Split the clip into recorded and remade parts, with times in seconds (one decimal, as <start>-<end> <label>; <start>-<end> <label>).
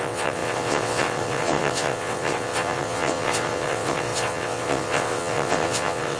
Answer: 0.0-6.2 remade